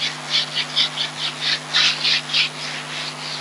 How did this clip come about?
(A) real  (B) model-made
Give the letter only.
A